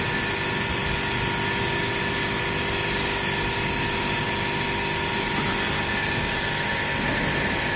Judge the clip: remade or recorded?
recorded